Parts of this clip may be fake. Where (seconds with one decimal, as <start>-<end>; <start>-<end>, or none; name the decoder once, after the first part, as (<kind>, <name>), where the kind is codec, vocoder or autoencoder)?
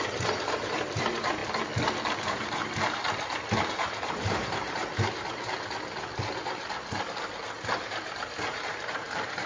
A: 0.0-1.4 (vocoder, BigVGAN v2); 2.2-2.6; 3.6-4.9; 7.6-9.5